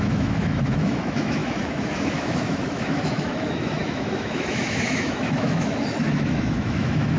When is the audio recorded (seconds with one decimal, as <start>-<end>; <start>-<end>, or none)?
none